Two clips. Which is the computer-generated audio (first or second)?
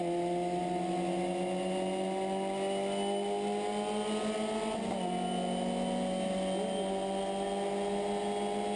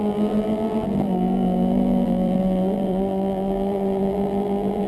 second